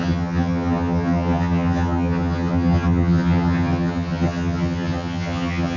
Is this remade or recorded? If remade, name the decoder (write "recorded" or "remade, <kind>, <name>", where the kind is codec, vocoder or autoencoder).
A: remade, vocoder, HiFi-GAN